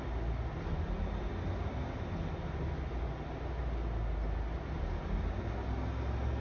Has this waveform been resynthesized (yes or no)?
no